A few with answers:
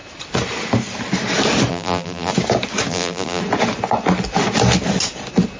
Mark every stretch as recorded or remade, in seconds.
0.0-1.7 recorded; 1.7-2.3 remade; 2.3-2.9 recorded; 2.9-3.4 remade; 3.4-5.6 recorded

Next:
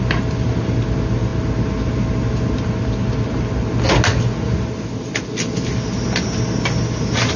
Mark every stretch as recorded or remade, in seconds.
0.0-7.4 recorded

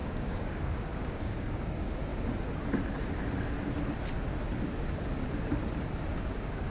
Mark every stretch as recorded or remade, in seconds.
0.0-2.1 remade; 2.1-6.1 recorded; 6.1-6.7 remade

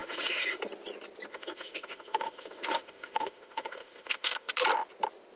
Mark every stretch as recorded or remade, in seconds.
0.0-0.6 remade; 0.6-1.3 recorded; 1.3-4.5 remade; 4.5-5.4 recorded

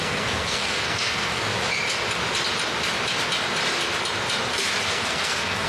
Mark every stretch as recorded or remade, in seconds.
0.0-1.5 remade; 1.5-4.9 recorded; 4.9-5.7 remade

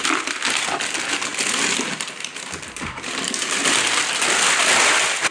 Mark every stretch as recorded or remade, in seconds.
0.0-5.3 recorded